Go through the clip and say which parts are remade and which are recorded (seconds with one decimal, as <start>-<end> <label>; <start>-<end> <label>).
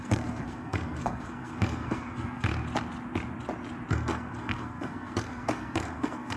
0.0-2.5 remade; 2.5-3.9 recorded; 3.9-6.4 remade